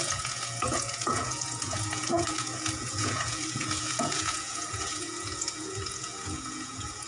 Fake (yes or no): yes